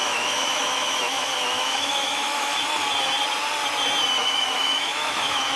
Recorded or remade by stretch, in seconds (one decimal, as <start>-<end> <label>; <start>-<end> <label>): 0.0-2.6 remade; 2.6-4.2 recorded; 4.2-5.6 remade